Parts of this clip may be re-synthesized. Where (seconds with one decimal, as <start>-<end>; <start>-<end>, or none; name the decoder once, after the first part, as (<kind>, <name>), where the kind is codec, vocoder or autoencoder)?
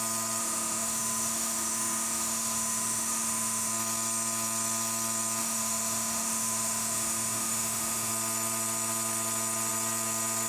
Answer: 0.4-3.7 (autoencoder, DAC-VAE); 5.4-8.1